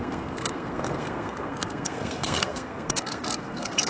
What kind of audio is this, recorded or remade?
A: remade